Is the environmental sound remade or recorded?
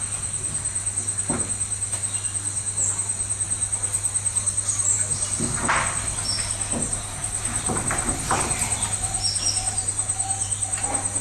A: recorded